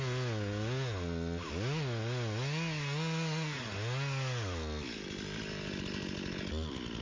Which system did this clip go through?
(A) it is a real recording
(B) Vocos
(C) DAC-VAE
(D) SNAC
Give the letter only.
A